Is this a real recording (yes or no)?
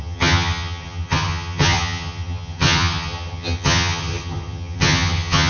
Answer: no